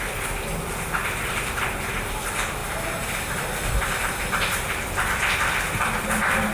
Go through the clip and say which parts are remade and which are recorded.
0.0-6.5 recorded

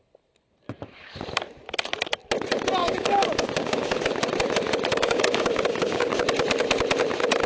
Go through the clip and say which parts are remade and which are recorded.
0.0-2.8 recorded; 2.8-4.0 remade; 4.0-4.9 recorded; 4.9-6.1 remade; 6.1-7.5 recorded

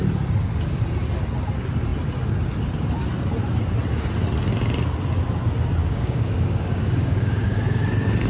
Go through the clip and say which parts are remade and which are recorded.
0.0-5.8 recorded; 5.8-7.8 remade; 7.8-8.3 recorded

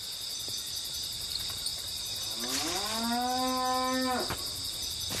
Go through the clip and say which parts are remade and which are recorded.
0.0-1.7 recorded; 1.7-2.2 remade; 2.2-5.2 recorded

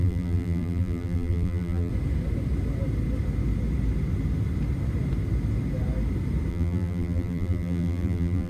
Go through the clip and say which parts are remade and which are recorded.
0.0-1.9 remade; 1.9-6.5 recorded; 6.5-8.5 remade

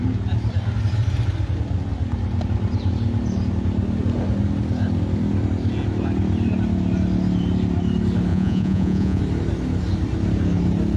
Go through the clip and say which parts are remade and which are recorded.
0.0-8.3 recorded; 8.3-9.2 remade; 9.2-11.0 recorded